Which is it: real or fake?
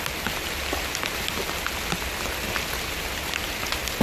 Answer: real